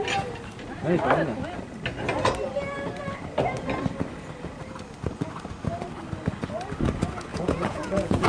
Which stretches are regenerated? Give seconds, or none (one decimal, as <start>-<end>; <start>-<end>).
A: 7.3-8.3